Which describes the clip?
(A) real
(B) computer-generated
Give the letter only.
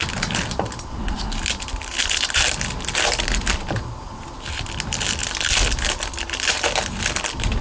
A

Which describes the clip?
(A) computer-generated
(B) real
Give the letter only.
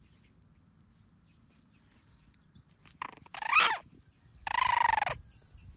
B